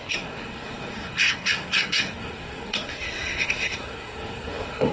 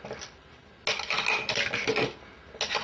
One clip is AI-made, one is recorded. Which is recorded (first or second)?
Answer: second